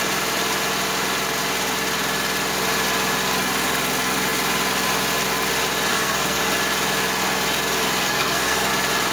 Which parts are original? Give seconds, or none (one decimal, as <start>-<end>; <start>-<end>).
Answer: 0.0-5.9; 6.4-8.0; 8.7-9.1